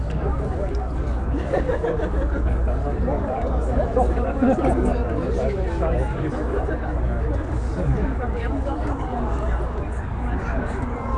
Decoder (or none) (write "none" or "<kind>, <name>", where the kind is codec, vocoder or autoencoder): codec, DAC